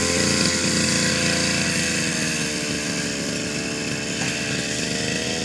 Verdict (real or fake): real